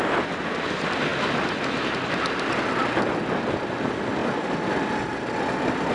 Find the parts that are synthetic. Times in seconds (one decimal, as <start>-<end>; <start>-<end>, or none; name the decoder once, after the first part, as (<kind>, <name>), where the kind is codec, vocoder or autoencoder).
none